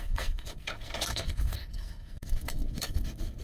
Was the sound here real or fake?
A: fake